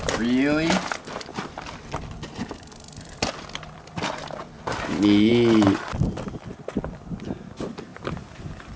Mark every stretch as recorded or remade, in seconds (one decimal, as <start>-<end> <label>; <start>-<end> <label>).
0.0-1.3 recorded; 1.3-5.3 remade; 5.3-8.8 recorded

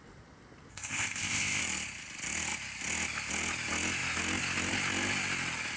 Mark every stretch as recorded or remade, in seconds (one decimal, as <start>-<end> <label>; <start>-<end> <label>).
0.0-0.7 recorded; 0.7-1.6 remade; 1.6-5.8 recorded

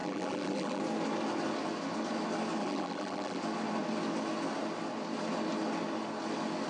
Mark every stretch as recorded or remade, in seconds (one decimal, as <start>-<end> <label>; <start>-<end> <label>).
0.0-0.8 remade; 0.8-2.6 recorded; 2.6-3.4 remade; 3.4-6.7 recorded

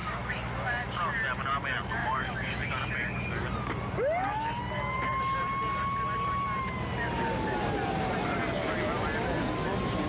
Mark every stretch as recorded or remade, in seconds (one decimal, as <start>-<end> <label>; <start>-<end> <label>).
0.0-0.5 remade; 0.5-2.0 recorded; 2.0-2.7 remade; 2.7-10.1 recorded

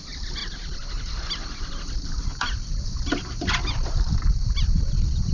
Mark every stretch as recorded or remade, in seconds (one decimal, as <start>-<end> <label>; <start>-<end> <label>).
0.0-0.4 remade; 0.4-1.6 recorded; 1.6-5.3 remade

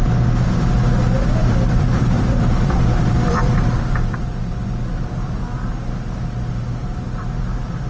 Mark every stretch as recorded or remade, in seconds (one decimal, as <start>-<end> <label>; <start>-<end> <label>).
0.0-1.4 recorded; 1.4-5.4 remade; 5.4-6.8 recorded; 6.8-7.9 remade